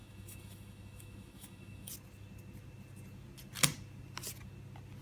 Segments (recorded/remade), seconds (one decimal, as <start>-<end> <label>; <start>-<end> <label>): 0.0-1.9 remade; 1.9-5.0 recorded